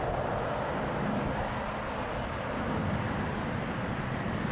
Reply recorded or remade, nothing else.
recorded